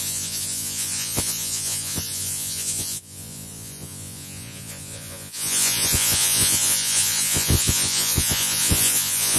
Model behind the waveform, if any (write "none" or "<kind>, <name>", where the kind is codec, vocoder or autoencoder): vocoder, Vocos